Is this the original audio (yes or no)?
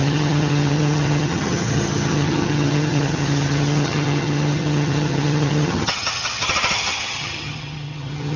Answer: no